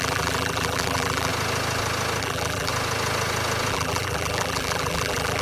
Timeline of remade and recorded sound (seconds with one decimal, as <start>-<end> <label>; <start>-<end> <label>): 0.0-1.3 remade; 1.3-2.2 recorded; 2.2-2.7 remade; 2.7-3.7 recorded; 3.7-5.4 remade